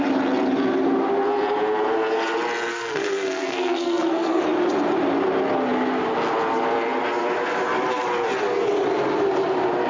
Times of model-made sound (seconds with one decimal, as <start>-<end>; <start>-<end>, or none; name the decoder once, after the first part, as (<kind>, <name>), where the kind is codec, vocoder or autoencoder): 2.7-4.4 (codec, SNAC)